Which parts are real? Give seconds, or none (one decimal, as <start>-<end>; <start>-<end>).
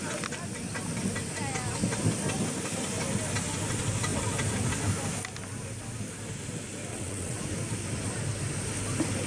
0.0-6.9; 7.4-9.3